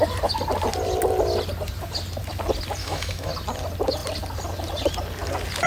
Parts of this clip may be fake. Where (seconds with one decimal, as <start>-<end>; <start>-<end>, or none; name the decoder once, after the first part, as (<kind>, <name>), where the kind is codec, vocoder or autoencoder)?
2.8-3.3 (autoencoder, DAC-VAE)